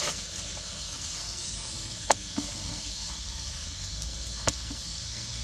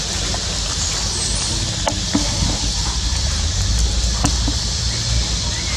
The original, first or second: second